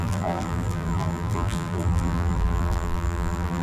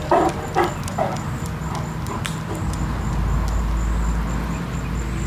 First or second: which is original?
second